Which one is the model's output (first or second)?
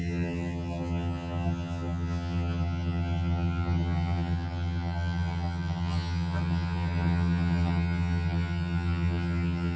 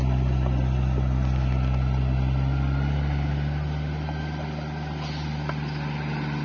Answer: first